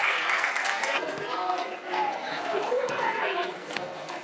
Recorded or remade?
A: remade